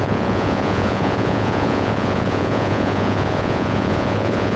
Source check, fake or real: fake